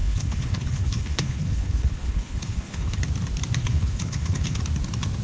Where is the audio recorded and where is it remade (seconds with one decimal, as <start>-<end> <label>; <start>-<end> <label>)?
0.0-3.0 remade; 3.0-3.6 recorded; 3.6-4.6 remade; 4.6-5.2 recorded